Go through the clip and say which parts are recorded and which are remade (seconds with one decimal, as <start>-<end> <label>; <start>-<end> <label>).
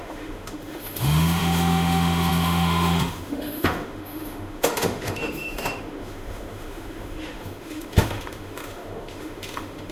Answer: 0.0-9.9 remade